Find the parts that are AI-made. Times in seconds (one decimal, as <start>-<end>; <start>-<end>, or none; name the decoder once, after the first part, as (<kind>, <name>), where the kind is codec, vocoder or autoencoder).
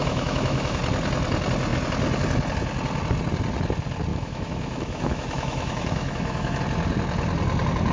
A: 0.0-0.8 (autoencoder, DAC-VAE); 4.1-6.6